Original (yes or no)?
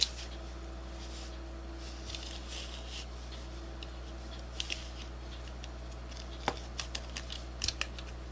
yes